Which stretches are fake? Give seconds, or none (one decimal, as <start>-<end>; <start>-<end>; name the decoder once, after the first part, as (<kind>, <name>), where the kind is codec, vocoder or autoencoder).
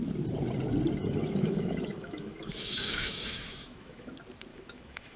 1.0-4.1 (autoencoder, DAC-VAE); 4.5-5.2